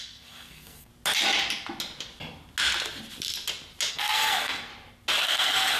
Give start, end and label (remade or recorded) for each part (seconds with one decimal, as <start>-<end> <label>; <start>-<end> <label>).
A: 0.0-0.9 remade; 0.9-3.9 recorded; 3.9-4.7 remade; 4.7-5.2 recorded; 5.2-5.8 remade